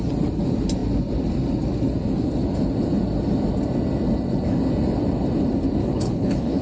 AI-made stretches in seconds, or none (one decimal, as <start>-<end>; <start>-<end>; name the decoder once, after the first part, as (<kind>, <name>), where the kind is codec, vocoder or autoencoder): 5.8-6.6 (codec, HILCodec)